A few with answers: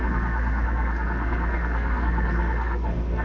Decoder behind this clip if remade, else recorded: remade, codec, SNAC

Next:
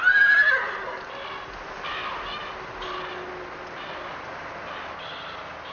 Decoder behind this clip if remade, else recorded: recorded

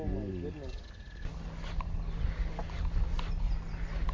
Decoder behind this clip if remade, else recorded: recorded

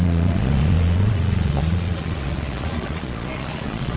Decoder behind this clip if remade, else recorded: remade, vocoder, Vocos